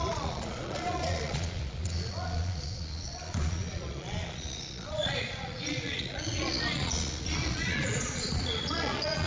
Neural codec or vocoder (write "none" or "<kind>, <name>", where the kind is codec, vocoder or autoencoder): vocoder, Vocos